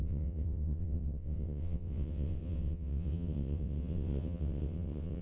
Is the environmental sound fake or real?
fake